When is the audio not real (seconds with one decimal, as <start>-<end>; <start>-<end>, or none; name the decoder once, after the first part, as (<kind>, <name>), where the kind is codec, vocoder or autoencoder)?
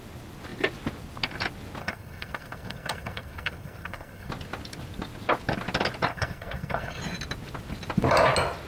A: 1.8-4.3 (codec, SNAC); 6.1-7.0